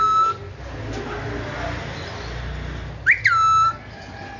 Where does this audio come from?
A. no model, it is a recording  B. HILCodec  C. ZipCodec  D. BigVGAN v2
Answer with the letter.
A